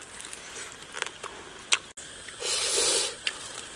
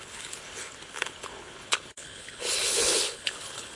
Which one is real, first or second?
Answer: first